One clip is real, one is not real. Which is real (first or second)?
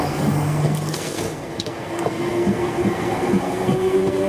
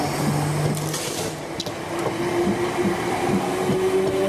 second